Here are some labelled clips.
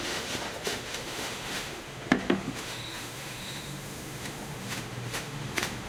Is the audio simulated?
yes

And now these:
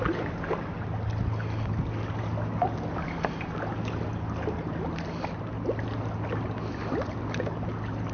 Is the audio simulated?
no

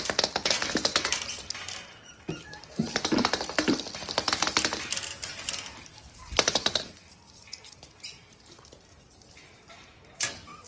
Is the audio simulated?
no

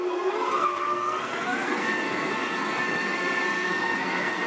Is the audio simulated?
yes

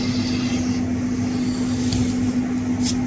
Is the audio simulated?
no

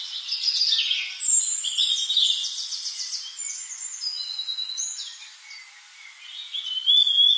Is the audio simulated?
no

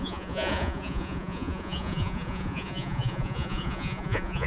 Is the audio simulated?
yes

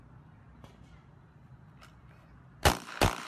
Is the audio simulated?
no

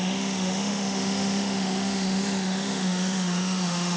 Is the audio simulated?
yes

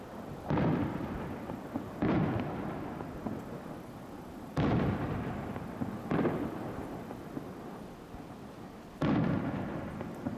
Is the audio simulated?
no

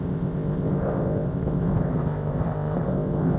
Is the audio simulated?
yes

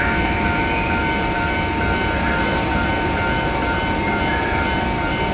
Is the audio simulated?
no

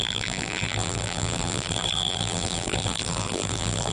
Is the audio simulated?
yes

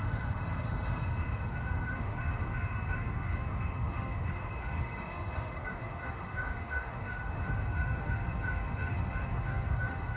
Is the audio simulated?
yes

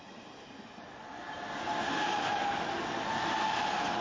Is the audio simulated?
no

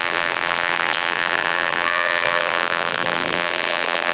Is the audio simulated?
yes